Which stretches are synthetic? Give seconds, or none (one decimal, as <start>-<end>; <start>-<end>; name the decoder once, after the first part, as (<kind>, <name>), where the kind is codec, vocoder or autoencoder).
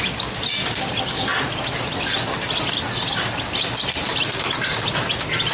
none